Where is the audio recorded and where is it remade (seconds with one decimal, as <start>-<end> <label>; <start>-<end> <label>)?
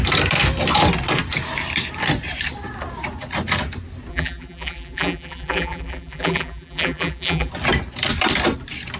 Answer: 0.0-4.1 recorded; 4.1-7.5 remade; 7.5-9.0 recorded